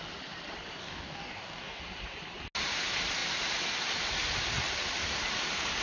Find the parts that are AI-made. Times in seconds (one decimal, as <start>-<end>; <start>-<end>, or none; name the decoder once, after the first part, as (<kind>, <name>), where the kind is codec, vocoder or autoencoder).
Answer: 0.8-1.8 (codec, DAC)